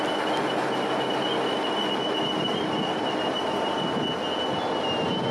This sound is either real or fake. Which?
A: real